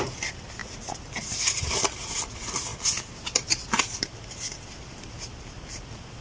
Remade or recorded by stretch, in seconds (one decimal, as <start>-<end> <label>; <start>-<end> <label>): 0.0-6.2 recorded

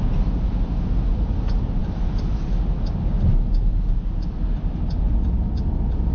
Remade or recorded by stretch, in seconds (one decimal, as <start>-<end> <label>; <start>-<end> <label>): 0.0-6.1 recorded

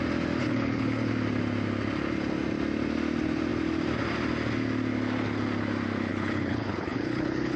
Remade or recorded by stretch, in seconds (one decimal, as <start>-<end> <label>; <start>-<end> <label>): 0.0-0.4 recorded; 0.4-1.1 remade; 1.1-6.1 recorded; 6.1-7.6 remade

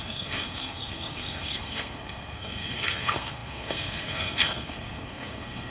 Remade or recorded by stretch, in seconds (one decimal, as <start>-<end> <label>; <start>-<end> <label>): 0.0-5.7 remade

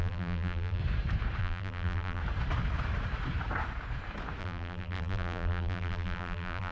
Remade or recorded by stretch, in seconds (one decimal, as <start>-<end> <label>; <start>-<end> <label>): 0.0-0.8 remade; 0.8-1.4 recorded; 1.4-2.2 remade; 2.2-4.4 recorded; 4.4-6.7 remade

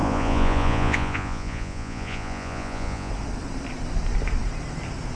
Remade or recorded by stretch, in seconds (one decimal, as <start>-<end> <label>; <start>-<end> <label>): 0.0-3.1 remade; 3.1-5.2 recorded

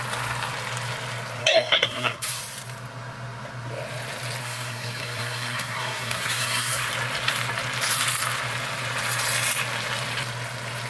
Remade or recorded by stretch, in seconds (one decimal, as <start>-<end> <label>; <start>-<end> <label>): 0.0-1.4 recorded; 1.4-2.4 remade; 2.4-4.4 recorded; 4.4-6.9 remade; 6.9-10.9 recorded